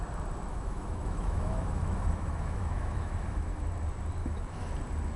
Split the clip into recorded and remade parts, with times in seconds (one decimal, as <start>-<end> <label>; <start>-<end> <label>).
0.0-0.5 recorded; 0.5-3.6 remade; 3.6-4.2 recorded; 4.2-4.7 remade; 4.7-5.2 recorded